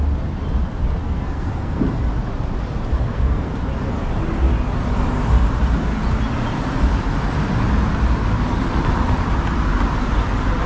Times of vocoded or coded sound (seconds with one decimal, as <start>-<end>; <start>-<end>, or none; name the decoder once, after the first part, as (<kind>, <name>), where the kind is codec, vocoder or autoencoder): 1.0-1.8 (codec, SNAC); 2.9-3.5